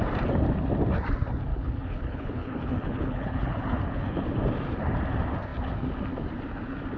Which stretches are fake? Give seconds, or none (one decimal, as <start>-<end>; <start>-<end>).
1.5-4.3